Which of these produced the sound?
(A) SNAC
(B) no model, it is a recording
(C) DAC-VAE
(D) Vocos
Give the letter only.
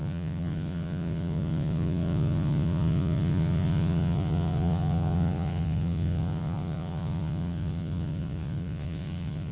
D